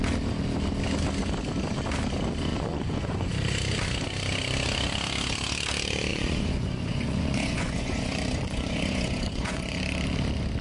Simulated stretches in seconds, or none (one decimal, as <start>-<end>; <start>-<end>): 2.5-3.3; 6.1-9.8